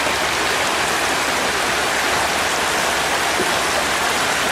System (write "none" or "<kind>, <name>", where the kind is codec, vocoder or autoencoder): none